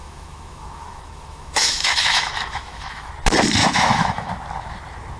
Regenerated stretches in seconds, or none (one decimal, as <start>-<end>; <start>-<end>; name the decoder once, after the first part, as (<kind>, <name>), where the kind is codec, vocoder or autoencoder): 0.0-3.1 (autoencoder, DAC-VAE); 3.6-4.3